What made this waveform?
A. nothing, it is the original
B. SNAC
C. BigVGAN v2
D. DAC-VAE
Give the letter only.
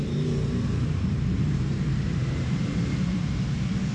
C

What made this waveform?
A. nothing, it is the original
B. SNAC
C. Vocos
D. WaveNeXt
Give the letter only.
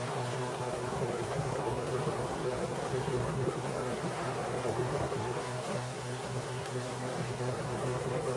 B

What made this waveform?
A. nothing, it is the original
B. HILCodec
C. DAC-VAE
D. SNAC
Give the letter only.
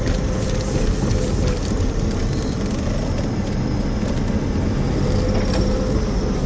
A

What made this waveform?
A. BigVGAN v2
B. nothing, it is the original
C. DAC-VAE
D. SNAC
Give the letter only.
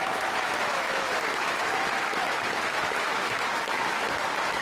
C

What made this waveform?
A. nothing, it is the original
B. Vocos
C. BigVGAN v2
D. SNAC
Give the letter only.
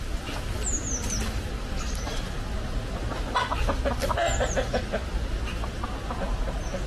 A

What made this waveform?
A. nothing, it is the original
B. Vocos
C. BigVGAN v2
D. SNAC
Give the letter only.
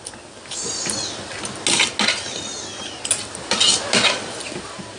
A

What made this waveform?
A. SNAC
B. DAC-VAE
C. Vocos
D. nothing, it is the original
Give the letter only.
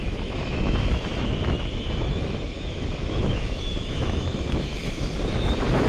B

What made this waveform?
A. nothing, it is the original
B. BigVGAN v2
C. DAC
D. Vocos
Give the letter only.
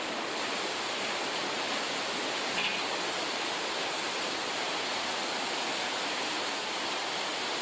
A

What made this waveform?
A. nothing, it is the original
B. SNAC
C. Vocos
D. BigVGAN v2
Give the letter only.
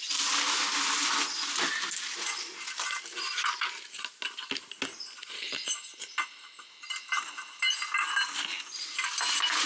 A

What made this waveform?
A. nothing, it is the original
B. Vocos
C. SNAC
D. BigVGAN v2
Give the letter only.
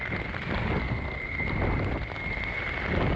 A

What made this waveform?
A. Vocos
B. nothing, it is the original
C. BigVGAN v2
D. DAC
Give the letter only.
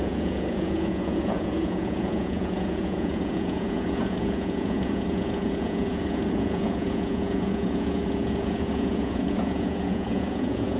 A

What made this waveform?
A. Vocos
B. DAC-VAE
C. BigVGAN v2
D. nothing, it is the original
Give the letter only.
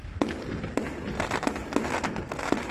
D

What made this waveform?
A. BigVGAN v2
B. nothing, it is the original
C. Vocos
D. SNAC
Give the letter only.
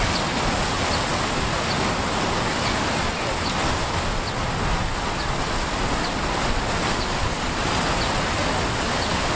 B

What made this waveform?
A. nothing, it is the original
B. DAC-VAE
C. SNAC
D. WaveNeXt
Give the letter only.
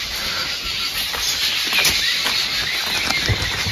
A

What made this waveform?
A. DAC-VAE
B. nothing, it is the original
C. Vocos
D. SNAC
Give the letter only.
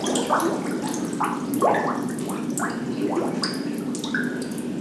B